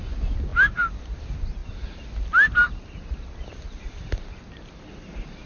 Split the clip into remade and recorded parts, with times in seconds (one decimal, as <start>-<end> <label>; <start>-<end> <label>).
0.0-5.5 recorded